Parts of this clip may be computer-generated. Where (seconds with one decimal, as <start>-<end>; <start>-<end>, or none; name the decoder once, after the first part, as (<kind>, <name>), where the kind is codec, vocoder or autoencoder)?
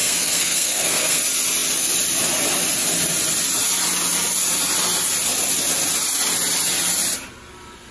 0.0-1.2 (codec, SNAC)